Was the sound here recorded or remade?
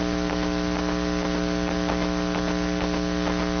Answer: recorded